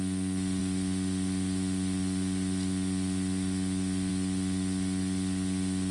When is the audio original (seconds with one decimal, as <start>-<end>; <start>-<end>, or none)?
0.0-5.9